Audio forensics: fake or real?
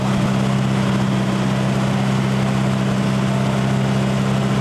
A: real